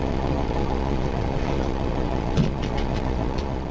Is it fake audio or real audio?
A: fake